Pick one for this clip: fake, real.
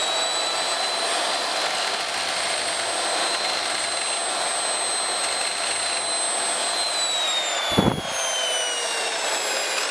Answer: real